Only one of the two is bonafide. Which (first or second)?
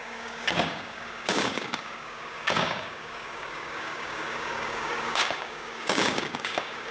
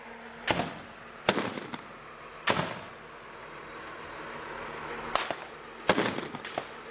second